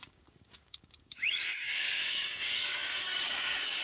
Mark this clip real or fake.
fake